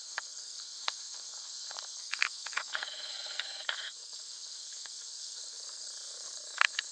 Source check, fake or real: fake